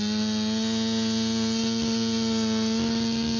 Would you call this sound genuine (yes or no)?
yes